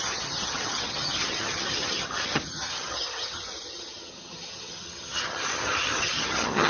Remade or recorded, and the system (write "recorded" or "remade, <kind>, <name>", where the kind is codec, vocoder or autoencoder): remade, vocoder, HiFi-GAN